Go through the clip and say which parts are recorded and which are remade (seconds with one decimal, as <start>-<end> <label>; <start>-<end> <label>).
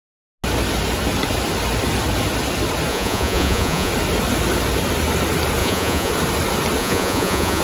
0.0-2.9 recorded; 2.9-3.9 remade; 3.9-5.6 recorded; 5.6-6.1 remade; 6.1-6.8 recorded; 6.8-7.6 remade